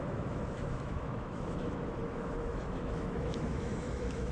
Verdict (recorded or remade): remade